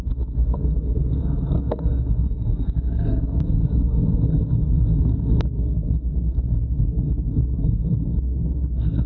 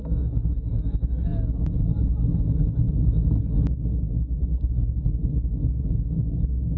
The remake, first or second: first